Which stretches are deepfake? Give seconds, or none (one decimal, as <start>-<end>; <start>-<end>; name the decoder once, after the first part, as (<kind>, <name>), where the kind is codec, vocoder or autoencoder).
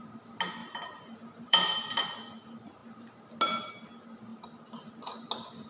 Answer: 0.6-2.0 (vocoder, BigVGAN v2); 4.3-5.0